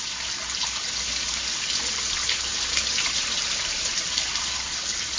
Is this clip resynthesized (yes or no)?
no